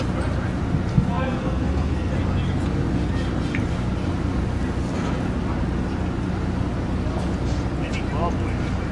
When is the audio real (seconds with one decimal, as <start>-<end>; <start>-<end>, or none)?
0.0-0.9; 2.1-8.9